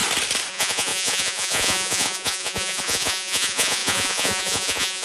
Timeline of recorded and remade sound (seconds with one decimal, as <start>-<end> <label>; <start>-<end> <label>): 0.0-0.5 recorded; 0.5-5.0 remade